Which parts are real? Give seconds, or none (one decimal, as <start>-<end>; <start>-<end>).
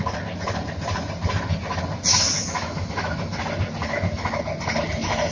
0.0-2.1; 3.4-3.8; 4.4-5.3